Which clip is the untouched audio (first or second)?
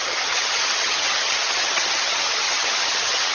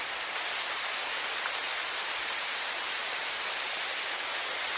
second